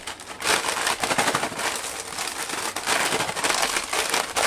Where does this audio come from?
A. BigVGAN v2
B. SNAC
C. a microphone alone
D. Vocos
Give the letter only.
C